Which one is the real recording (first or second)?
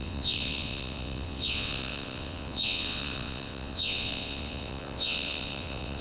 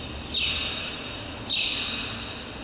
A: second